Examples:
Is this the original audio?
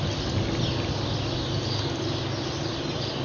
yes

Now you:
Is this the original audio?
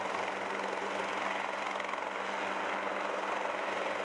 yes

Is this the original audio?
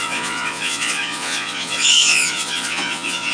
no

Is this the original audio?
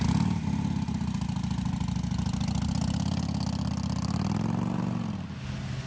yes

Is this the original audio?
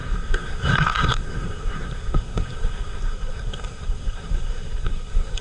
no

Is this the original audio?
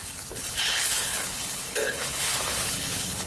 no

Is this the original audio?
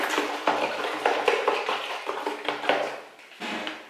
yes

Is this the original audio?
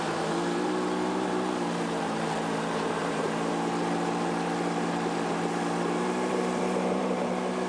no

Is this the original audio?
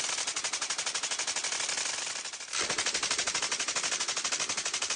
yes